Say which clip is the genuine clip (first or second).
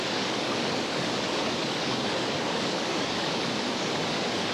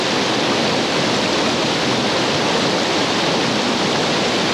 second